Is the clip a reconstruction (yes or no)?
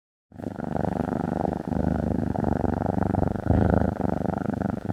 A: yes